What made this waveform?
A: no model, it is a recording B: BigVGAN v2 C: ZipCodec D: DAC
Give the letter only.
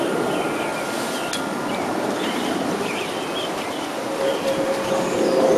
A